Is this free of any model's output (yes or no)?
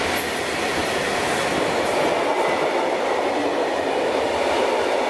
yes